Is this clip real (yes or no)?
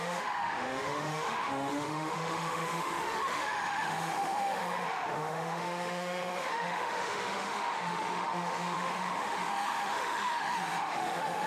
no